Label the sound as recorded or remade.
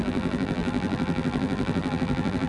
remade